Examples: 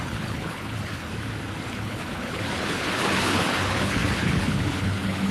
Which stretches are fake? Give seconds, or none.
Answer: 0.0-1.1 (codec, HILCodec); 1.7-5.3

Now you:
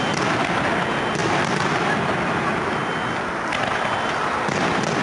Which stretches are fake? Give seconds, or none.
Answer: none

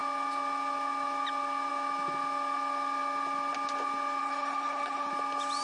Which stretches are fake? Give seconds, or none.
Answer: 4.2-5.1 (codec, HILCodec)

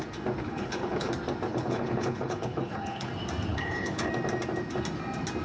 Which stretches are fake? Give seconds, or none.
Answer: 0.4-1.1 (codec, HILCodec); 1.5-3.1; 3.5-4.1

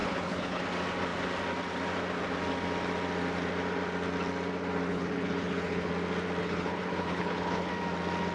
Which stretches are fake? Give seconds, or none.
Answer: 0.0-0.6 (codec, HILCodec); 4.9-5.9; 6.4-7.7

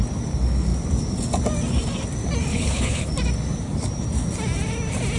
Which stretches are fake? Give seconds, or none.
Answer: 2.5-3.1 (codec, HILCodec)

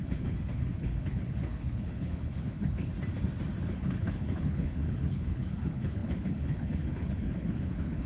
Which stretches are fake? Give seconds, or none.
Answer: 0.0-2.9 (codec, HILCodec); 3.7-8.1

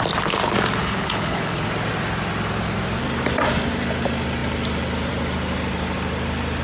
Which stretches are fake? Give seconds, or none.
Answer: 0.8-1.7 (codec, HILCodec)